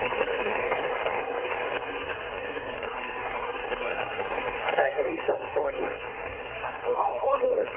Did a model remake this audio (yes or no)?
yes